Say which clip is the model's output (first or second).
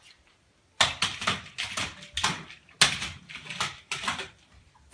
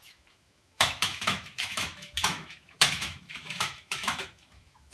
second